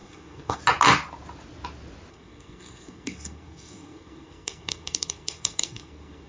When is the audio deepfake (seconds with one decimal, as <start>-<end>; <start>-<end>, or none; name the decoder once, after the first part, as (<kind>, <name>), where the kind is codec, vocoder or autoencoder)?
0.0-0.6 (codec, SNAC); 2.1-6.3